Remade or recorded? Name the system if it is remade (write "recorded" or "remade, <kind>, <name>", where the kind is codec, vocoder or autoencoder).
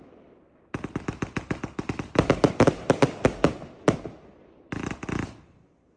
recorded